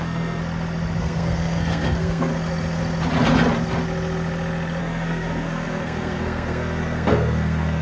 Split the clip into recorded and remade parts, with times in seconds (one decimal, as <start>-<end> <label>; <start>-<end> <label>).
0.0-0.4 remade; 0.4-1.0 recorded; 1.0-2.3 remade; 2.3-4.8 recorded; 4.8-7.8 remade